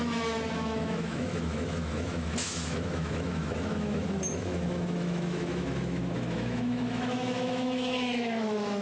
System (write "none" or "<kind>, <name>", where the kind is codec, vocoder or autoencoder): autoencoder, DAC-VAE